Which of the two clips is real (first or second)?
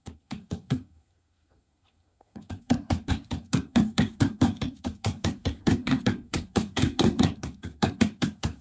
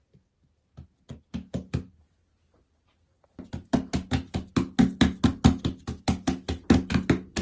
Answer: second